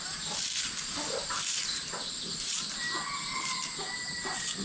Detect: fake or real real